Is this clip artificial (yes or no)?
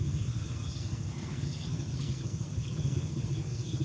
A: yes